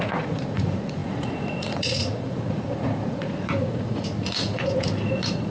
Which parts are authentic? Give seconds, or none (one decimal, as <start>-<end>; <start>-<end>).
none